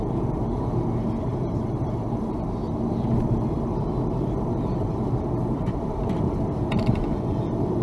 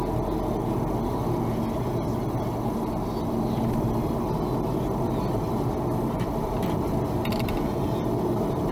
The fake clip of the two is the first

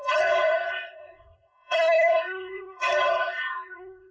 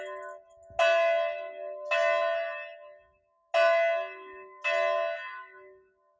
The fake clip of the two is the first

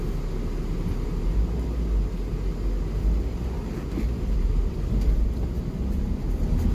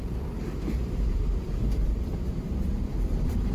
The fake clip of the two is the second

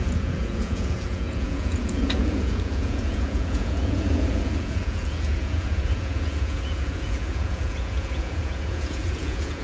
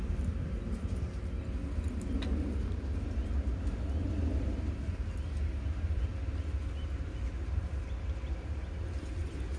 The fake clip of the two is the first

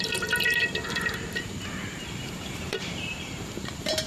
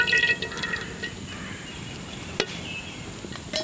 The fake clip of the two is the first